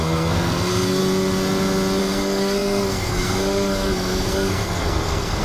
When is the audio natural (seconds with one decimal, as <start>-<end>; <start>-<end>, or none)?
1.0-2.0